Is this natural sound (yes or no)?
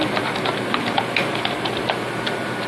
yes